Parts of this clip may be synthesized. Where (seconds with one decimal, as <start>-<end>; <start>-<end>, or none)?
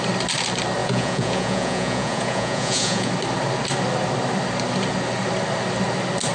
0.8-3.1